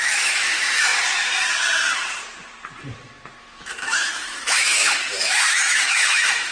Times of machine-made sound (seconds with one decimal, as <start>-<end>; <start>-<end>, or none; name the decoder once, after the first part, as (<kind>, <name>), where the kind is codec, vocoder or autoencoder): 0.0-0.9 (autoencoder, DAC-VAE); 3.4-6.5